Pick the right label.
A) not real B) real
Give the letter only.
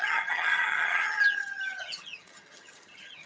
A